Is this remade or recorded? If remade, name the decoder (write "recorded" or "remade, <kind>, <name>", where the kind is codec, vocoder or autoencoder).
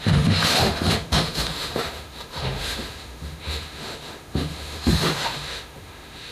remade, autoencoder, DAC-VAE